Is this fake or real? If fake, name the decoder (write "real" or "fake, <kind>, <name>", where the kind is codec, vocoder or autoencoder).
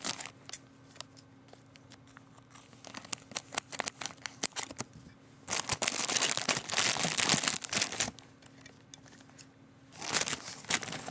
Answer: real